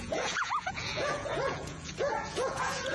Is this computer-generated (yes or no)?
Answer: yes